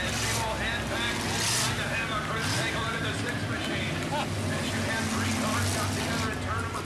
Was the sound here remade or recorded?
recorded